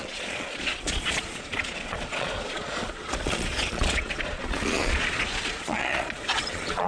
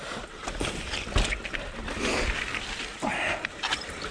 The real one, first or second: second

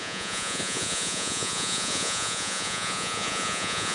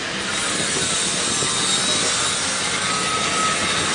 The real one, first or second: second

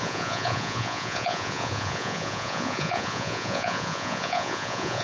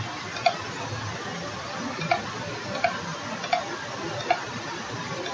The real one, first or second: second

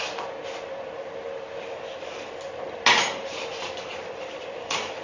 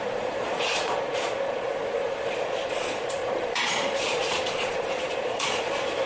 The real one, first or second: first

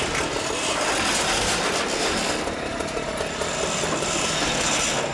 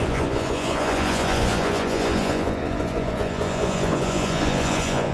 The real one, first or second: first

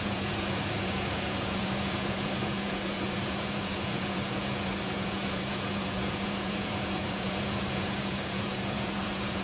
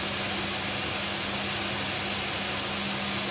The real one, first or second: second